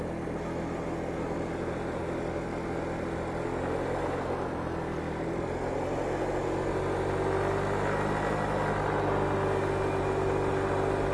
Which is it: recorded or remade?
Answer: recorded